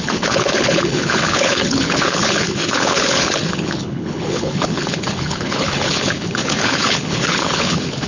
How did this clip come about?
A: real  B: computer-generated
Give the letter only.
B